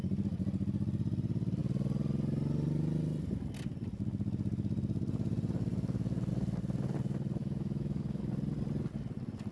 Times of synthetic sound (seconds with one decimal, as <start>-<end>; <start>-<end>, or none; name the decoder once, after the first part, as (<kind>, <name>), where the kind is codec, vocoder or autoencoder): 7.4-8.2 (autoencoder, DAC-VAE)